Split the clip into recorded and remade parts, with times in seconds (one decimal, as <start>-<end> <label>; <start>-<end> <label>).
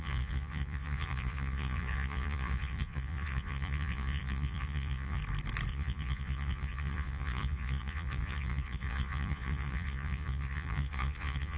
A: 0.0-5.2 remade; 5.2-5.7 recorded; 5.7-11.6 remade